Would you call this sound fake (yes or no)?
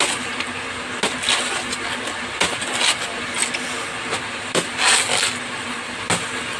no